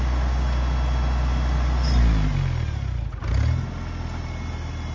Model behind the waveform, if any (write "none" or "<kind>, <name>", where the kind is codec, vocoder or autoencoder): none